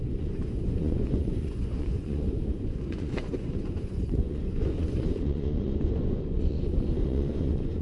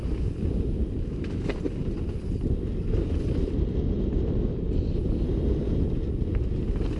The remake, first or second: first